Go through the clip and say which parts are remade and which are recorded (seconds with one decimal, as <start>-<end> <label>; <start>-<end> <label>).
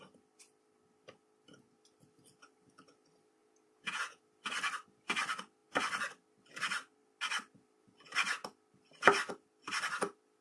0.0-3.4 recorded; 3.4-4.2 remade; 4.2-10.4 recorded